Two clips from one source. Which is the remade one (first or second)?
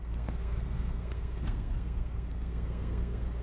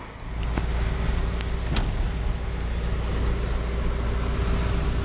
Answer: first